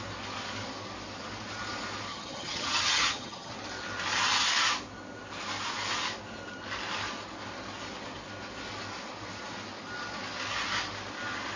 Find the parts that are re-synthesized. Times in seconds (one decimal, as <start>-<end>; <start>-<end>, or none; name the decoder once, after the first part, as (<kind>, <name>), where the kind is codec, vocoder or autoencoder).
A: 2.1-3.5 (vocoder, HiFi-GAN)